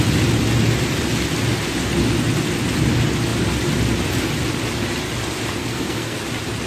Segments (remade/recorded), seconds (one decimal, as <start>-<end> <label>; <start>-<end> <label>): 0.0-5.6 recorded; 5.6-6.2 remade; 6.2-6.7 recorded